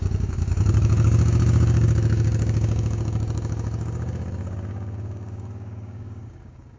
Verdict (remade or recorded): remade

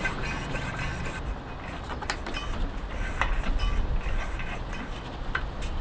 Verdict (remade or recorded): recorded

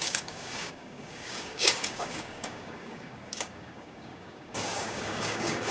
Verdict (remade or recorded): remade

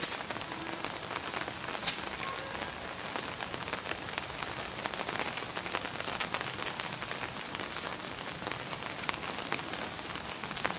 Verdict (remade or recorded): recorded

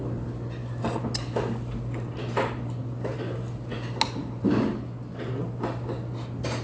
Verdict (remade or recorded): recorded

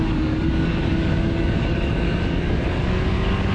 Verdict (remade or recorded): remade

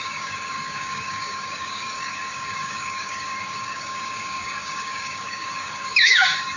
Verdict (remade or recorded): remade